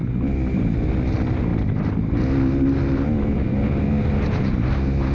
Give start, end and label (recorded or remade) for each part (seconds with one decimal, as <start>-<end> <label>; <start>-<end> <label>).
0.0-5.1 recorded